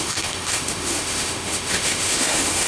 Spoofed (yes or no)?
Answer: yes